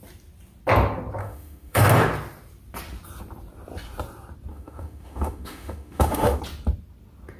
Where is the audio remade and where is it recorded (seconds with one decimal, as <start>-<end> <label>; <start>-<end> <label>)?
0.0-1.2 recorded; 1.2-1.9 remade; 1.9-4.5 recorded; 4.5-6.4 remade; 6.4-7.4 recorded